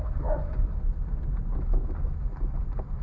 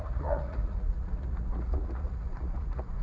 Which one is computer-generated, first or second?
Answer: second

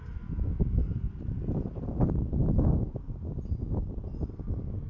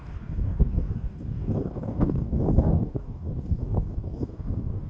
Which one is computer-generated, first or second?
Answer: second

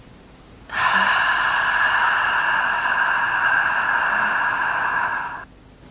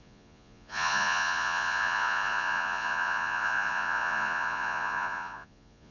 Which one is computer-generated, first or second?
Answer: second